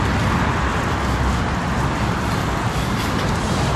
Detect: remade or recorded recorded